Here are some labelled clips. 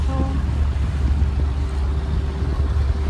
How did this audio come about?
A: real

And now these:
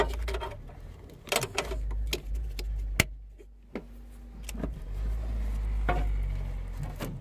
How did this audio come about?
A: real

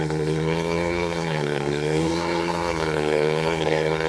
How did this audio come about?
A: fake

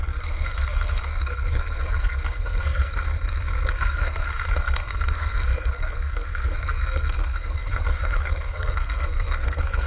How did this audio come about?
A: fake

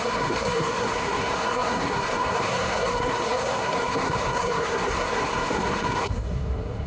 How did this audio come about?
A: fake